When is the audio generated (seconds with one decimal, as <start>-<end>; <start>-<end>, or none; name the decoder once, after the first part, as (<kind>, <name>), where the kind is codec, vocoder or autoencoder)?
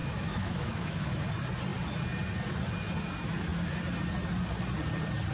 0.0-1.1 (autoencoder, DAC-VAE)